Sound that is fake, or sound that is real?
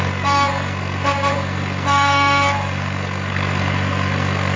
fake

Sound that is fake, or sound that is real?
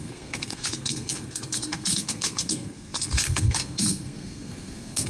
fake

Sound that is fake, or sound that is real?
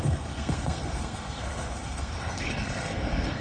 fake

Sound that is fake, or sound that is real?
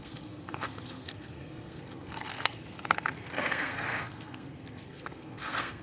fake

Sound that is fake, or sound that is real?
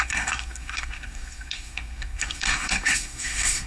fake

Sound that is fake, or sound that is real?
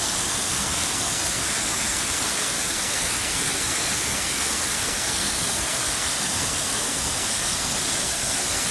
fake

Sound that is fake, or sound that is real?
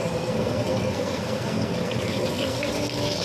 fake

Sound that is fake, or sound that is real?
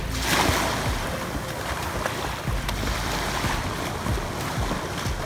real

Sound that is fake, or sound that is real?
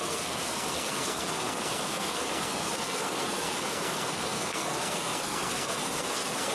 fake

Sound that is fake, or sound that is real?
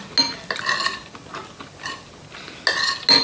real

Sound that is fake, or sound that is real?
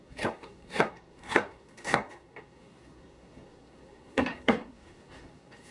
fake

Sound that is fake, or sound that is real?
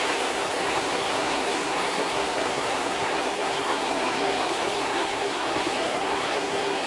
fake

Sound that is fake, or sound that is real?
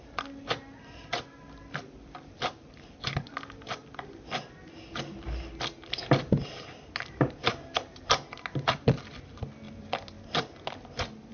real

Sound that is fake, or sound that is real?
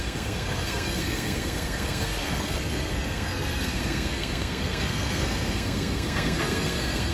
fake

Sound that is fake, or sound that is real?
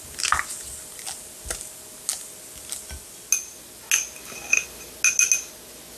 real